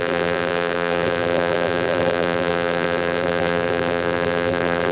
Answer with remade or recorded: remade